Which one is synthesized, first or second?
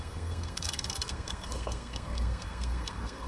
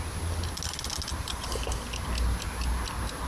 first